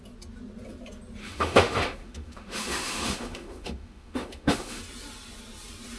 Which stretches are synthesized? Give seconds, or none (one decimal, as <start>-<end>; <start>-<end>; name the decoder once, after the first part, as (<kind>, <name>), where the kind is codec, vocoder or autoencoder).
1.2-4.8 (autoencoder, DAC-VAE)

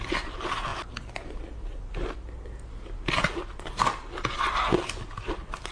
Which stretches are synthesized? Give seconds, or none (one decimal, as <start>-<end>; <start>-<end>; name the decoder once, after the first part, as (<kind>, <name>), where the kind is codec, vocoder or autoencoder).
none